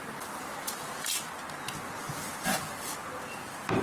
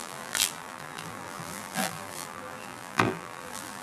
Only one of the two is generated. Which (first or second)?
second